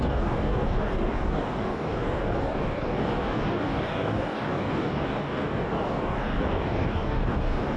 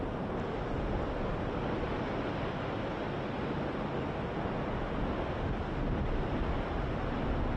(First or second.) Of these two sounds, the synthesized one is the first